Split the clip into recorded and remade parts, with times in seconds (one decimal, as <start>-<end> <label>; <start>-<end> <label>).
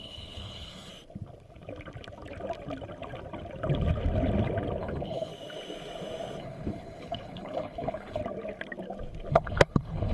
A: 0.0-0.9 remade; 0.9-4.8 recorded; 4.8-5.3 remade; 5.3-6.4 recorded; 6.4-8.2 remade; 8.2-9.3 recorded; 9.3-10.1 remade